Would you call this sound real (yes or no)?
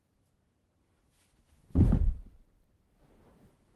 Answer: yes